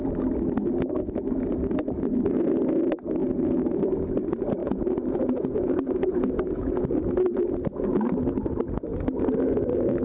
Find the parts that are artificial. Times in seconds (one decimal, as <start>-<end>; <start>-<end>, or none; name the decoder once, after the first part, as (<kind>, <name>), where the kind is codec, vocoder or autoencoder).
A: 3.2-3.8 (vocoder, Vocos); 4.6-6.8